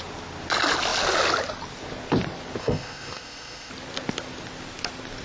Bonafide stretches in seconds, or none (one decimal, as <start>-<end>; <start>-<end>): 0.0-2.6; 3.7-5.2